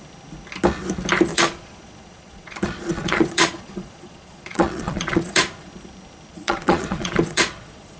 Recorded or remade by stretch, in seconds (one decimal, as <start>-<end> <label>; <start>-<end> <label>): 0.0-1.3 recorded; 1.3-5.7 remade; 5.7-6.3 recorded; 6.3-8.0 remade